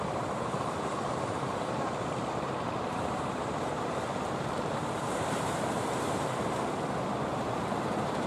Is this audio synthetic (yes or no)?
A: yes